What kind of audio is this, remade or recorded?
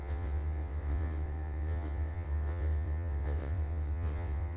remade